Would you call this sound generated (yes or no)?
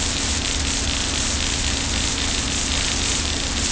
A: no